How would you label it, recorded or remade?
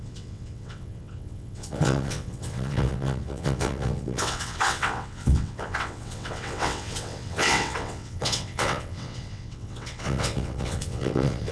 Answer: remade